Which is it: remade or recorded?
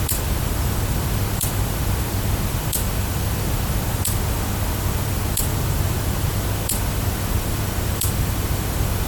remade